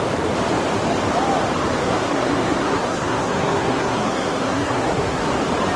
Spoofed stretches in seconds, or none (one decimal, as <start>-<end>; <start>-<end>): 1.8-5.3